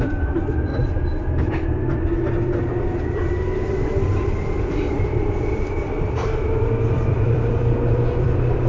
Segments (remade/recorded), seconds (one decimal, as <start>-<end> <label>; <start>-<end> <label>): 0.0-0.7 remade; 0.7-3.7 recorded; 3.7-7.6 remade; 7.6-8.1 recorded; 8.1-8.7 remade